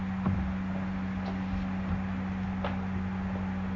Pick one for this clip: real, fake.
real